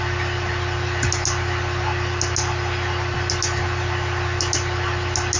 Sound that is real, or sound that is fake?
real